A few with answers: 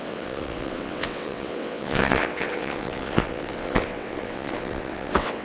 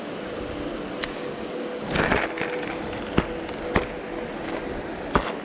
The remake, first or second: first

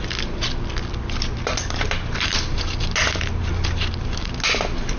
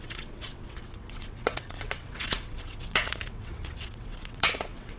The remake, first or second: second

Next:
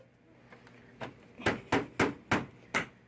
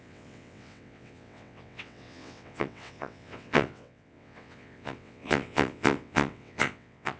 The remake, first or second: second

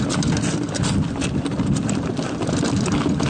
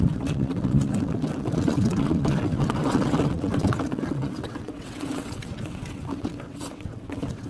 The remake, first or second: second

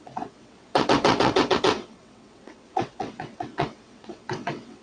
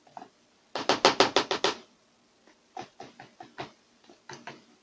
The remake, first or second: first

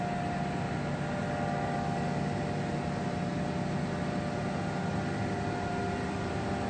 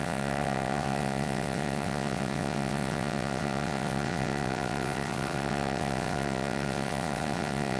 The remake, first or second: second